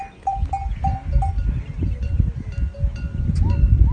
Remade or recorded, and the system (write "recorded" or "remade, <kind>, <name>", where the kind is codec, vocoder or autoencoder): recorded